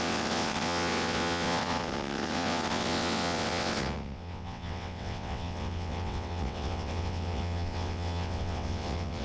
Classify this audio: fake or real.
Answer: fake